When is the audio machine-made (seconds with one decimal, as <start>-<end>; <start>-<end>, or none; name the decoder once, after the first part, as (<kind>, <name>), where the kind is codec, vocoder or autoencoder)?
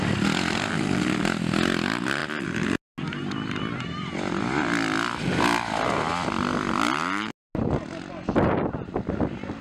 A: none